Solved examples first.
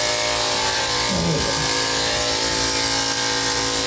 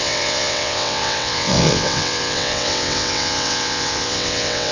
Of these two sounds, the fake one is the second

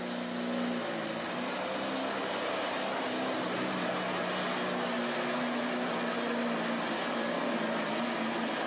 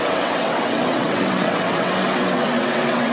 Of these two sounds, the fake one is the second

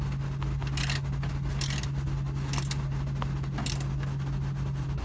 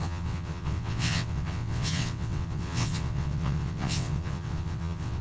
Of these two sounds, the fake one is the second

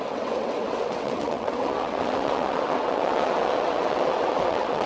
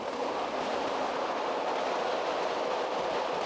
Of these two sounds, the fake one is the first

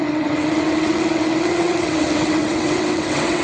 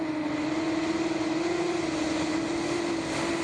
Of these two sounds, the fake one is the first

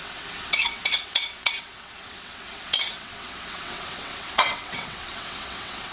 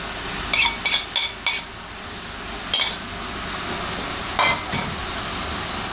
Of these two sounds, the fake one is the first